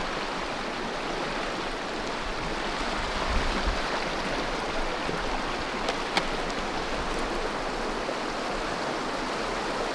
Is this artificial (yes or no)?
no